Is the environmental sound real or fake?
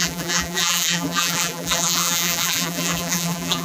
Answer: fake